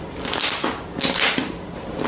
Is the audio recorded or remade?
recorded